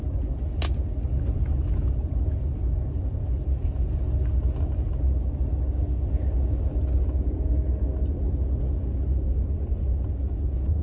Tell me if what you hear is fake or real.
real